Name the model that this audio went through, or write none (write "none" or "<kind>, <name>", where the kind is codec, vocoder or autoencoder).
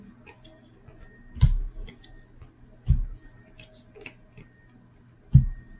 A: none